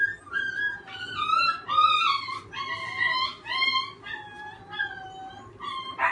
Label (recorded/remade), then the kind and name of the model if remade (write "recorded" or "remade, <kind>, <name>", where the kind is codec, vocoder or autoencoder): recorded